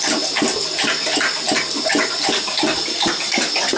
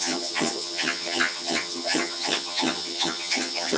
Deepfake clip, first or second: second